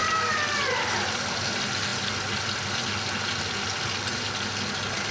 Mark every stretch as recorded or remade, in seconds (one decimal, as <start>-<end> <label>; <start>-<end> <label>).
0.0-5.1 recorded